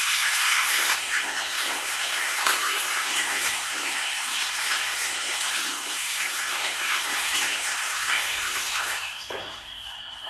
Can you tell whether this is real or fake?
fake